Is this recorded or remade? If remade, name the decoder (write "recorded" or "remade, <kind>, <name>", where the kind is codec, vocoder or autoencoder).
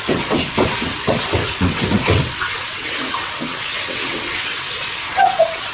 remade, vocoder, WaveNeXt